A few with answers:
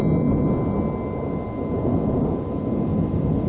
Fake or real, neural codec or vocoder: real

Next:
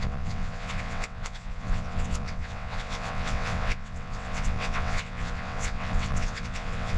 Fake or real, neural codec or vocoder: fake, vocoder, WaveNeXt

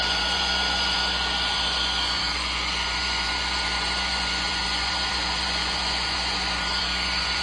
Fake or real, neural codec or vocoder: fake, vocoder, Vocos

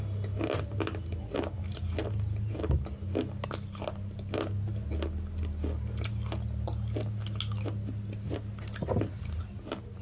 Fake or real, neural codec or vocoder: real